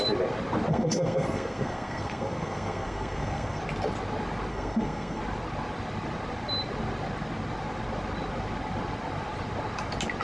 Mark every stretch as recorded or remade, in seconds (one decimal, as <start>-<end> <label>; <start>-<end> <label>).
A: 0.0-0.7 recorded; 0.7-3.6 remade; 3.6-4.5 recorded; 4.5-5.2 remade; 5.2-10.2 recorded